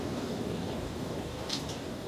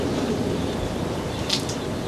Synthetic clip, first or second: first